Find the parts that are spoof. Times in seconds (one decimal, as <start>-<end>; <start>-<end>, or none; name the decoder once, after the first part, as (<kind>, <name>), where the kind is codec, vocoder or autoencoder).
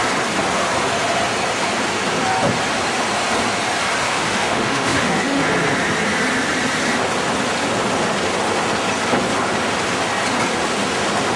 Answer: 4.0-5.4 (autoencoder, DAC-VAE)